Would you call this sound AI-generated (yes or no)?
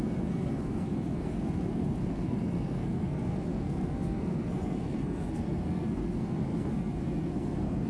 yes